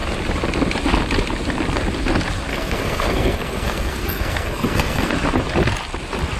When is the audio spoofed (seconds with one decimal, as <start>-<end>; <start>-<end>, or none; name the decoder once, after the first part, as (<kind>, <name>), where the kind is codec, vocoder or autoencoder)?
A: 2.5-5.1 (codec, SNAC)